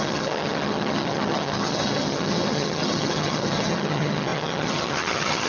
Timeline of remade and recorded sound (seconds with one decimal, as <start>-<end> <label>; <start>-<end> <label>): 0.0-5.5 remade